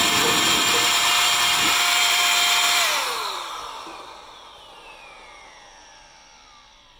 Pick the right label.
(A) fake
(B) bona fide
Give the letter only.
A